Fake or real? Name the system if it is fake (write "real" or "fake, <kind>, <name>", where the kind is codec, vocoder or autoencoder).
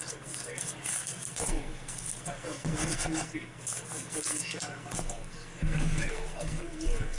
fake, codec, SNAC